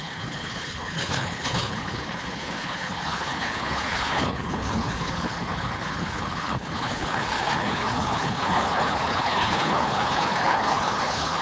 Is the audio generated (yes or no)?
yes